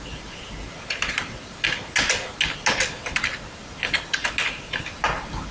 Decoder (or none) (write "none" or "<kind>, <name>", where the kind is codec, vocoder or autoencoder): none